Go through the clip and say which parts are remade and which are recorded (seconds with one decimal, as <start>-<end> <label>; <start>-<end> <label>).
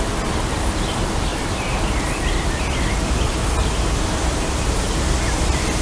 0.0-1.3 recorded; 1.3-2.0 remade; 2.0-3.6 recorded; 3.6-5.8 remade